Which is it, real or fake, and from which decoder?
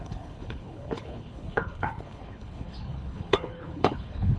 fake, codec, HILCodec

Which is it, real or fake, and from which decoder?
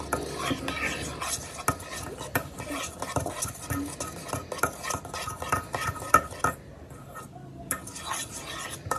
real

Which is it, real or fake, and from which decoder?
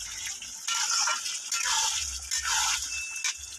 real